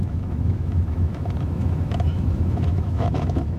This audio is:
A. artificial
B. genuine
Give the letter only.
A